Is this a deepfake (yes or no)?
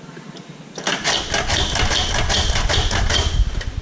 no